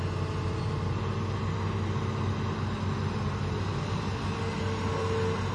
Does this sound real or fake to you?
real